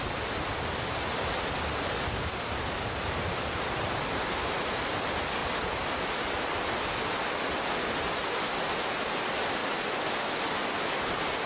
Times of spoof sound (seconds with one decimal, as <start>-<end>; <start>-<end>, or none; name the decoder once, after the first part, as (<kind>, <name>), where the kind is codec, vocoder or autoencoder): none